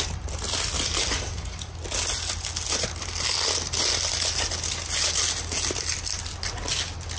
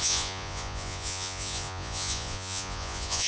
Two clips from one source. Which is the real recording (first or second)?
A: first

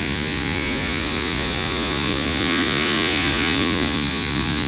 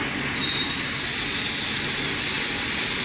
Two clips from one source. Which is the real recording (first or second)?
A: second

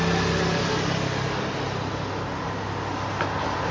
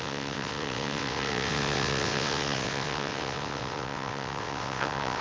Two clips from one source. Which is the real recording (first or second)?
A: first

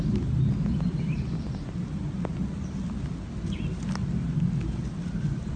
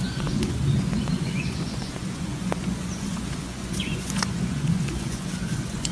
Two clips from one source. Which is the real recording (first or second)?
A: first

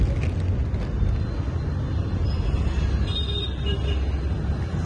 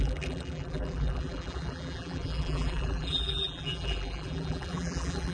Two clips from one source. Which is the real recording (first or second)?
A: first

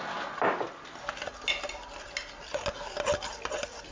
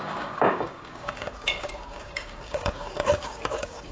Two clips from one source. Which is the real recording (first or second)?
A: first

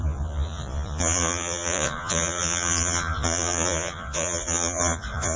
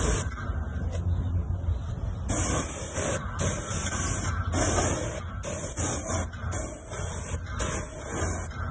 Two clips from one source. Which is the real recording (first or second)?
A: second